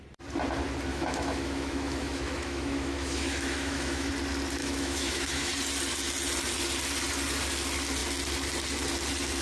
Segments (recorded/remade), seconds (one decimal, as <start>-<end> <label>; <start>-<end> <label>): 0.0-0.9 recorded; 0.9-4.1 remade; 4.1-4.6 recorded; 4.6-5.5 remade; 5.5-9.4 recorded